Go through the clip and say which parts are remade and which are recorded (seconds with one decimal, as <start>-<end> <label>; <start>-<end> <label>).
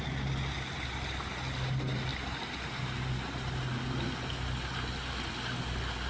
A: 0.0-6.1 recorded